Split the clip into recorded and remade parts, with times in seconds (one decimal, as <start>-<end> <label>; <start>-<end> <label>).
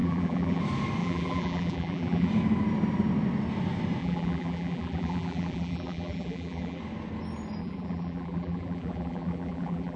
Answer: 0.0-0.6 remade; 0.6-1.0 recorded; 1.0-2.3 remade; 2.3-4.0 recorded; 4.0-6.8 remade; 6.8-7.6 recorded; 7.6-10.0 remade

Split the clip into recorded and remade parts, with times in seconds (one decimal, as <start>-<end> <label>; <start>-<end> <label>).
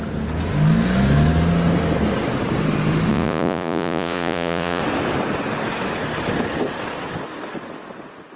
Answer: 0.0-3.1 recorded; 3.1-4.8 remade; 4.8-8.4 recorded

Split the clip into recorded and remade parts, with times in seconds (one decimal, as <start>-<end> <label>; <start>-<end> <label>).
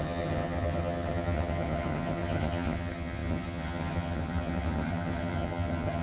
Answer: 0.0-6.0 remade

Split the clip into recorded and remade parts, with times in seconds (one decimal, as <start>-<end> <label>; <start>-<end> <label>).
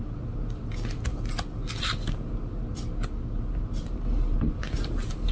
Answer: 0.0-5.3 recorded